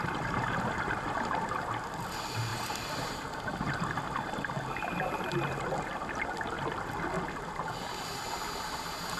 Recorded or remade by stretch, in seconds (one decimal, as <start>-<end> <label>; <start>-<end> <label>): 0.0-2.5 recorded; 2.5-3.1 remade; 3.1-9.2 recorded